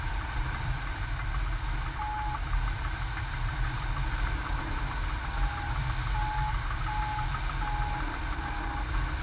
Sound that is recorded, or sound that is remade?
recorded